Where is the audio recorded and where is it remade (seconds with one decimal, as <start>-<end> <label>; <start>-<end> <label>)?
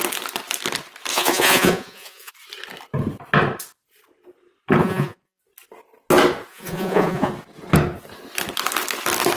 0.0-1.1 recorded; 1.1-2.3 remade; 2.3-4.8 recorded; 4.8-5.4 remade; 5.4-6.5 recorded; 6.5-7.3 remade; 7.3-9.4 recorded